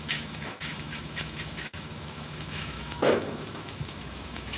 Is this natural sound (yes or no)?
no